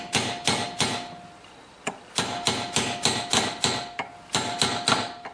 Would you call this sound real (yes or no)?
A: yes